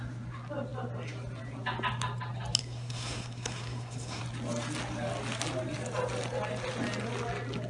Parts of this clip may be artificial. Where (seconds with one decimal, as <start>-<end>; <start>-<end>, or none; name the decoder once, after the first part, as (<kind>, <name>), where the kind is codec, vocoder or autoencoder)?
2.6-4.2 (codec, SNAC)